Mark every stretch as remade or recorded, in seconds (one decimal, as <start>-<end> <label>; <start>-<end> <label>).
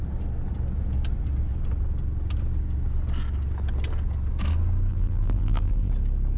0.0-4.9 recorded; 4.9-5.9 remade; 5.9-6.4 recorded